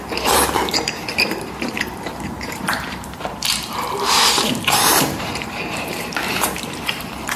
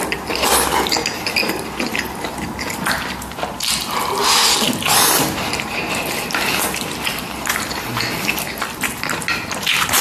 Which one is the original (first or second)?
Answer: second